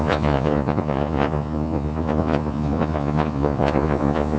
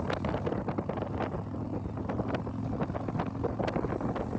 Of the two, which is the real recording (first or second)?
second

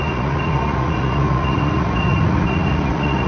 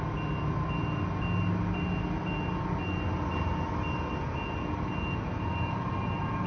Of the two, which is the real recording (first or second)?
second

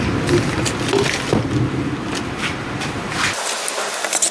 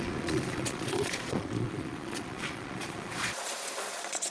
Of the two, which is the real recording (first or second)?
first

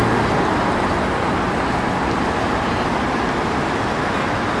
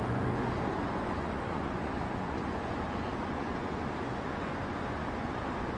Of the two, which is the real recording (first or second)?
first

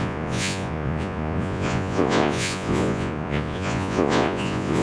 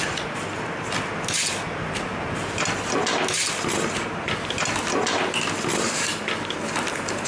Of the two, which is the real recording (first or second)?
second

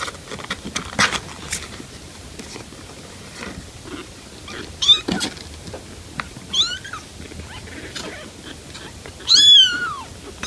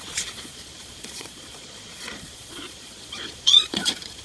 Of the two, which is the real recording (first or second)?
first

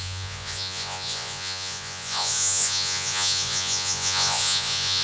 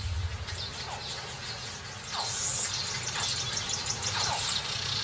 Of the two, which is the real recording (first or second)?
second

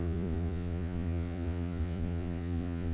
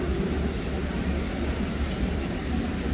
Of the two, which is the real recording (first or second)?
second